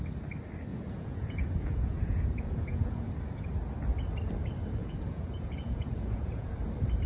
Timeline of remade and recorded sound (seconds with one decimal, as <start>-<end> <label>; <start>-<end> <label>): 0.0-0.7 recorded; 0.7-3.1 remade; 3.1-4.8 recorded; 4.8-6.5 remade; 6.5-7.1 recorded